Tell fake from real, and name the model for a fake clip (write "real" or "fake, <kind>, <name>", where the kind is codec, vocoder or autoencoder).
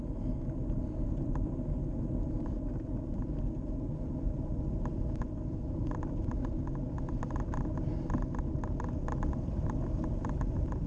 real